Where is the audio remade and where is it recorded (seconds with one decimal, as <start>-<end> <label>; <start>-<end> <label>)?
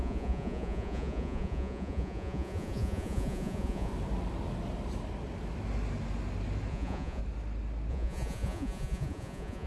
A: 0.0-3.9 remade; 3.9-6.7 recorded; 6.7-7.2 remade; 7.2-7.9 recorded; 7.9-9.7 remade